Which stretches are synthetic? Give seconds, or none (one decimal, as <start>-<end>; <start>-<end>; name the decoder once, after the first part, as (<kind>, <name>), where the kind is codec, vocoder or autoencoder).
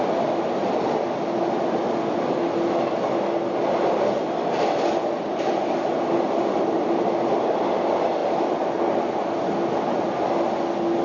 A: none